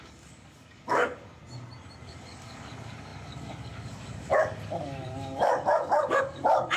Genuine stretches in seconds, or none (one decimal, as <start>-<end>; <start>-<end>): 1.4-2.0